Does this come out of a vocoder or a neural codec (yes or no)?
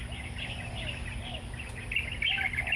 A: no